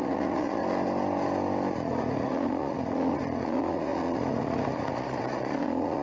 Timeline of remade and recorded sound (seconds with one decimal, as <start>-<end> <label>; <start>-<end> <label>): 0.0-0.6 remade; 0.6-1.7 recorded; 1.7-6.0 remade